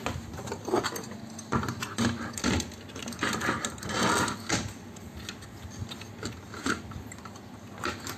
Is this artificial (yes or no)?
no